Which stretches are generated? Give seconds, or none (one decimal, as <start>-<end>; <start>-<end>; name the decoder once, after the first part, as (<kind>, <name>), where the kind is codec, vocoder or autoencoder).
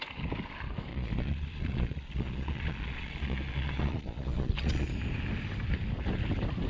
0.9-4.9 (vocoder, Vocos)